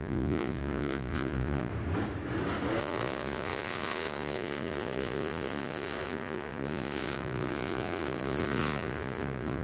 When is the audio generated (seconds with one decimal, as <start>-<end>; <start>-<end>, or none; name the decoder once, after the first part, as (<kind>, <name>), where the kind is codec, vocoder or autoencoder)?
0.0-1.7 (vocoder, Vocos); 2.8-9.6